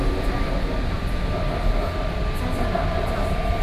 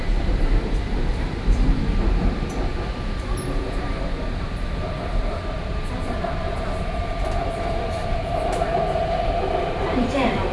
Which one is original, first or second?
first